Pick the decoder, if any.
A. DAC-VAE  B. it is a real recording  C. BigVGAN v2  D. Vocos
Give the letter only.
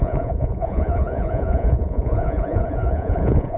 D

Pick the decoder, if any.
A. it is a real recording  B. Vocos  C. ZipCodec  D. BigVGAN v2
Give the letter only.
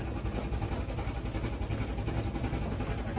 A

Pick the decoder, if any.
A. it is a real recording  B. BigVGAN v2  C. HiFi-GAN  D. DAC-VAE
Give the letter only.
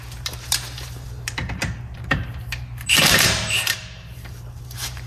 B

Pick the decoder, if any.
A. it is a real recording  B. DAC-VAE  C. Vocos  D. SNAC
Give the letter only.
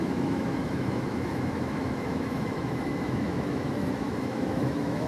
B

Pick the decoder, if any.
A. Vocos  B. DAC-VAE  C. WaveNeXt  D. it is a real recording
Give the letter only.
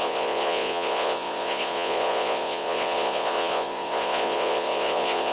A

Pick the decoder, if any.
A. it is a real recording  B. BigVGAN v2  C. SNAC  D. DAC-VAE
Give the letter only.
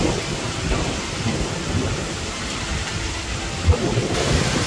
A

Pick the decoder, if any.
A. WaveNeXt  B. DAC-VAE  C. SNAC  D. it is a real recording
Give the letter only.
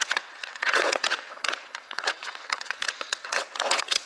A